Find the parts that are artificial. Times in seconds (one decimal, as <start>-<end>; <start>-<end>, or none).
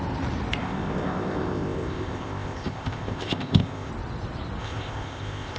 0.6-3.9; 4.6-5.6